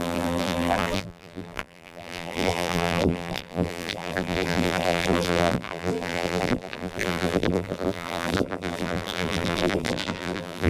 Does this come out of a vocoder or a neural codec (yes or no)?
yes